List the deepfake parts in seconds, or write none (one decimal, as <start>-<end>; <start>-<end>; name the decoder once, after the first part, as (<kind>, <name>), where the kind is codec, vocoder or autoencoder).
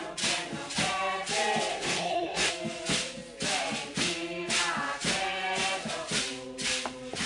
1.7-2.5 (codec, SNAC)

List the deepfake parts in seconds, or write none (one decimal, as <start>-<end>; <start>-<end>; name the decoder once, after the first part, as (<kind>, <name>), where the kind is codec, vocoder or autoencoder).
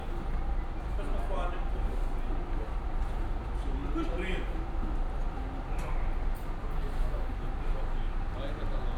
none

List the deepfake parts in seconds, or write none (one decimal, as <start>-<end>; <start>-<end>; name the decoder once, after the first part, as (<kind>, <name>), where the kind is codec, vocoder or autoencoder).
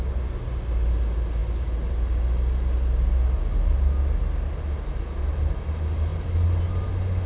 none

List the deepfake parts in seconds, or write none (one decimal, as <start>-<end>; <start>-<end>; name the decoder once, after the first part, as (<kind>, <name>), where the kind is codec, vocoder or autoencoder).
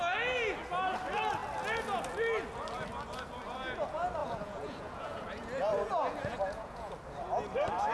4.2-6.9 (vocoder, Vocos)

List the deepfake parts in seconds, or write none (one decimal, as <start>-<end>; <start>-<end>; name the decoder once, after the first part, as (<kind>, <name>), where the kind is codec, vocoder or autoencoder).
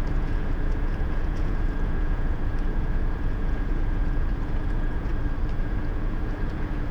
0.0-5.1 (vocoder, Vocos); 5.6-6.9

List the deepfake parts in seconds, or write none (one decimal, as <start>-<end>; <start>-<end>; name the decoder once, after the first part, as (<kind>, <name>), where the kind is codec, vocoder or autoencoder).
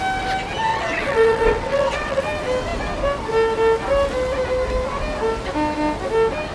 0.7-2.2 (vocoder, WaveNeXt)